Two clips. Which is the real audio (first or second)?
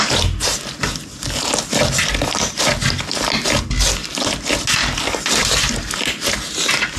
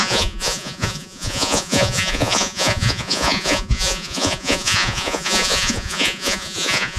first